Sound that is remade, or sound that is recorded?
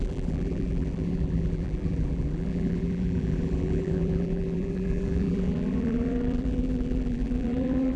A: remade